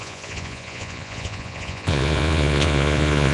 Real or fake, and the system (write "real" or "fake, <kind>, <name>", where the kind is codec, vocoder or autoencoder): fake, vocoder, Vocos